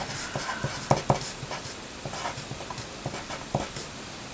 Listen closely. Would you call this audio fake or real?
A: real